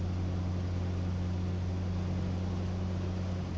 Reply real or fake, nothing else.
real